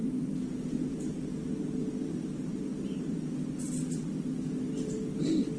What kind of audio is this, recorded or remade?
recorded